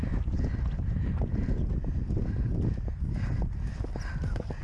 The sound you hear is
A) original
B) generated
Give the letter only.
A